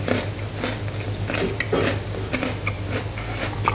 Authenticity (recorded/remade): recorded